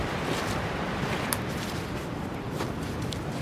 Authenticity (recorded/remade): remade